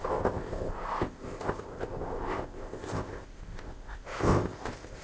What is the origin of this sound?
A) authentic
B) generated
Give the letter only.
B